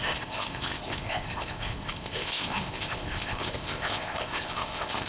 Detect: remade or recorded remade